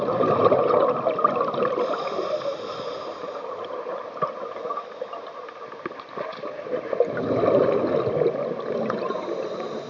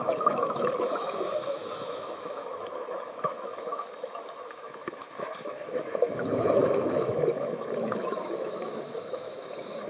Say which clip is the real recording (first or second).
first